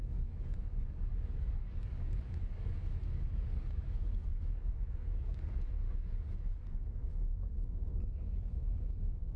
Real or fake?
fake